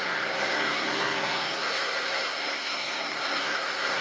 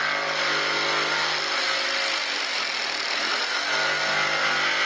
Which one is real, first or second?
second